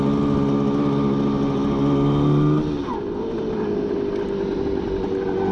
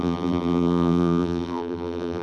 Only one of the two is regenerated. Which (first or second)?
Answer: second